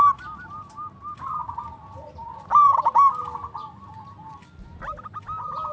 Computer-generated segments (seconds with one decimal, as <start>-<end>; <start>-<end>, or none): none